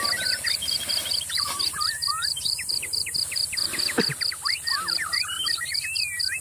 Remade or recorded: remade